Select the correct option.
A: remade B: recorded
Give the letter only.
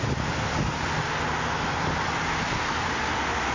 B